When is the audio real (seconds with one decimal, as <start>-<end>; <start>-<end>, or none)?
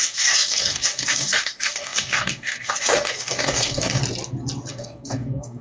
4.0-4.7